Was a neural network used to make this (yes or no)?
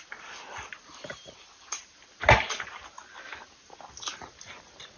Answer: no